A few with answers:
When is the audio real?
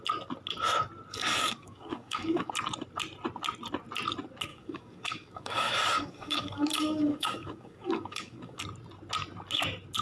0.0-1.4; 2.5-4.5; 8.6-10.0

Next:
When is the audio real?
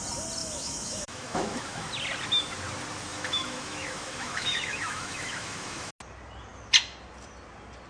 0.0-0.4; 1.9-3.1; 5.9-7.9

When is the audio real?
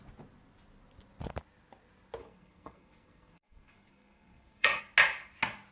0.0-2.2; 4.8-5.7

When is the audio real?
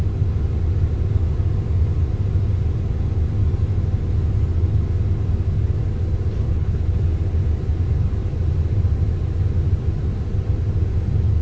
0.0-6.3; 7.0-11.4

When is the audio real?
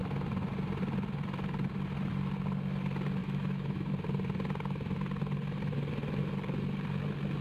0.0-3.2; 3.9-7.4